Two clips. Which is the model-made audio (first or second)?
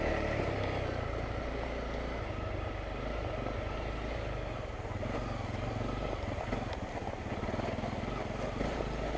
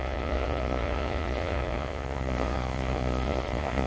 second